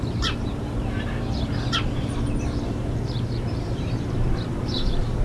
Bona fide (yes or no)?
no